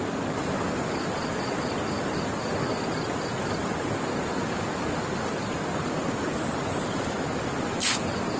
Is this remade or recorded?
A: recorded